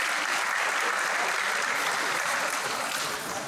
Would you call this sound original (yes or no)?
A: yes